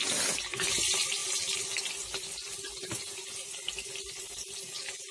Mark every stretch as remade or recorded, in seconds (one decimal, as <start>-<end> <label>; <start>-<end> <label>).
0.0-5.1 recorded